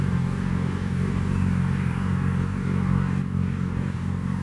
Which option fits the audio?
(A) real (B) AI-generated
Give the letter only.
B